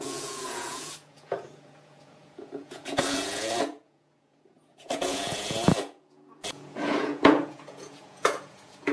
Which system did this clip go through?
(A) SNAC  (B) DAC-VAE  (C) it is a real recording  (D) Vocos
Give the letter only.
D